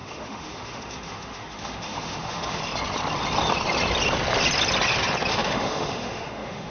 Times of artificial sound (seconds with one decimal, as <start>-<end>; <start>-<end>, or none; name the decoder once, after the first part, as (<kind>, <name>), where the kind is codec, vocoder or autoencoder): 0.0-2.6 (autoencoder, DAC-VAE); 5.3-6.7